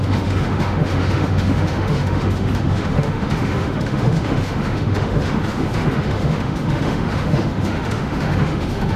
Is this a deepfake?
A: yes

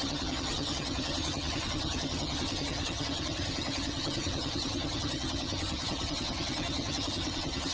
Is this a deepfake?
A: yes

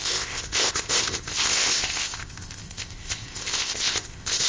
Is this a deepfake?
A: yes